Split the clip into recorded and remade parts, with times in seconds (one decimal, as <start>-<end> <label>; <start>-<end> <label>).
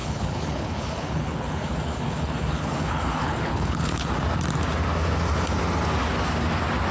0.0-4.1 remade; 4.1-6.9 recorded